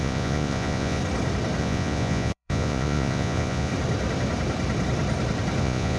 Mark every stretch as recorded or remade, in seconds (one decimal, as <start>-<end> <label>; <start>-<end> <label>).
0.0-1.0 remade; 1.0-1.6 recorded; 1.6-3.7 remade; 3.7-5.6 recorded; 5.6-6.0 remade